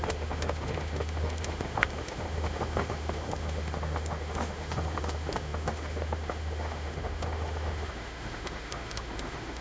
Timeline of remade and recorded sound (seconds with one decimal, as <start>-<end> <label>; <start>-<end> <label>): 0.0-9.6 remade